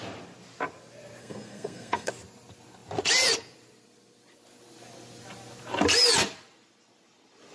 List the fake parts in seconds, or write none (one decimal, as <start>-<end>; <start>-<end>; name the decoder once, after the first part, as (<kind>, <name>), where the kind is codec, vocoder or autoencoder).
1.2-2.1 (codec, SNAC)